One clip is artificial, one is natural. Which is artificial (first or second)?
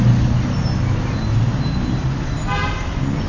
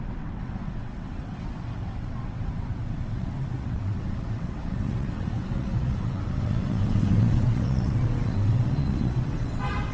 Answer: second